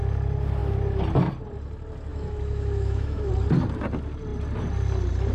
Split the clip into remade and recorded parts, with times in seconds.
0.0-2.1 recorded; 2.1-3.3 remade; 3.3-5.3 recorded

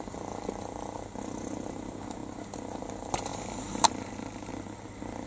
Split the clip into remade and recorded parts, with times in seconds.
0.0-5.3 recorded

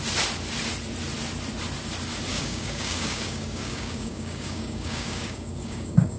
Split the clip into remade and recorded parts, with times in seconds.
0.0-2.3 recorded; 2.3-6.2 remade